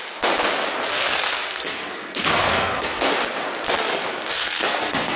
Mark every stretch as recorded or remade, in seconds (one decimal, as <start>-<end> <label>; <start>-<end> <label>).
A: 0.0-0.9 recorded; 0.9-3.1 remade; 3.1-4.3 recorded; 4.3-5.2 remade